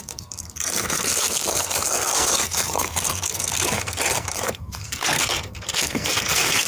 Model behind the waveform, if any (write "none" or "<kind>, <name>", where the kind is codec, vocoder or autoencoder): codec, SNAC